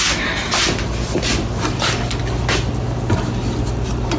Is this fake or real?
real